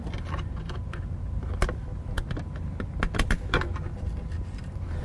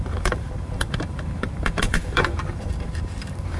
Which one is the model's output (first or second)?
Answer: second